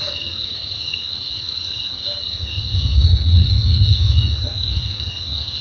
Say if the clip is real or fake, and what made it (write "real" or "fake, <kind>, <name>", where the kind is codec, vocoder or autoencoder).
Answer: fake, codec, SNAC